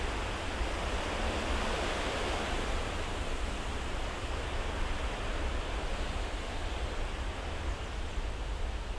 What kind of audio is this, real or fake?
real